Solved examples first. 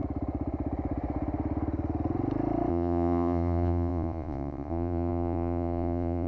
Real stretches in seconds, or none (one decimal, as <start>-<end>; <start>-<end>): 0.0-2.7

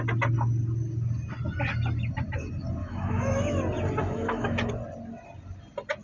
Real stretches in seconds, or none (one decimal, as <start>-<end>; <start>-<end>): 0.0-2.8; 3.6-4.0; 4.7-6.0

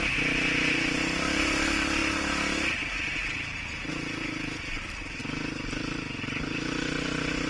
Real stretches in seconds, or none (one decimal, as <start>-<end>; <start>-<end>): 0.0-7.5

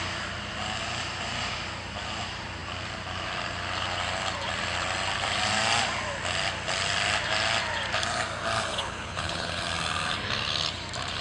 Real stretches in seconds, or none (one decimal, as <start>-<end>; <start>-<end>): 0.0-8.7; 9.6-11.2